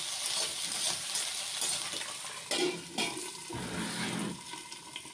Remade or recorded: recorded